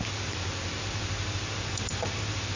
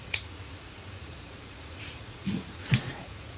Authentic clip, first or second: first